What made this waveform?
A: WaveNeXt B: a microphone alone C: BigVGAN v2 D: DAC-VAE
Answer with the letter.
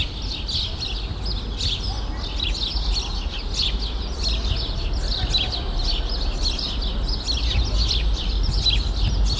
B